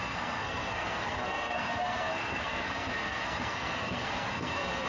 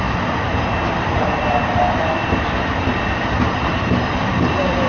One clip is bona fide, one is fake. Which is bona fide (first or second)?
second